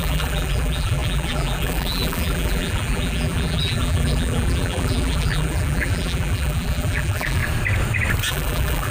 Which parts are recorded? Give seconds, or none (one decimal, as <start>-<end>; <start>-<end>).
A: 7.4-8.3